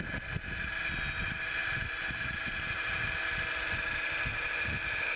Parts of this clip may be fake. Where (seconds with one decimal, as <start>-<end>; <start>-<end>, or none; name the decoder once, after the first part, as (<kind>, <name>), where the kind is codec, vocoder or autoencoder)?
none